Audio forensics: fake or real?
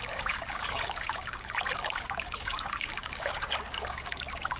fake